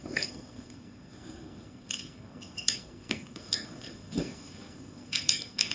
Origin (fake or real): fake